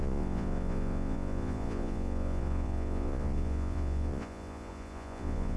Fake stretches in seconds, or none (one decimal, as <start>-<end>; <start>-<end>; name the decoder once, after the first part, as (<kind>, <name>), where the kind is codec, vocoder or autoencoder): 0.0-5.6 (vocoder, Vocos)